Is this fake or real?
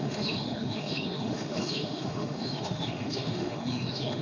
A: fake